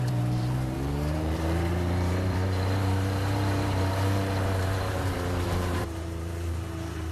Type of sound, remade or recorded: remade